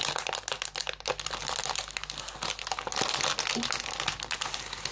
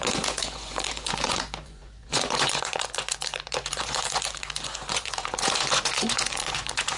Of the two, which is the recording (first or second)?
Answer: first